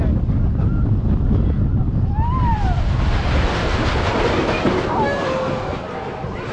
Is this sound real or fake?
real